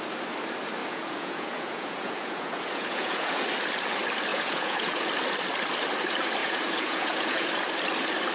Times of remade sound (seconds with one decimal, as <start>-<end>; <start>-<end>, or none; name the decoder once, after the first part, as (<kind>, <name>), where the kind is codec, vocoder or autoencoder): 0.8-3.4 (vocoder, Vocos); 4.3-5.0; 6.4-7.5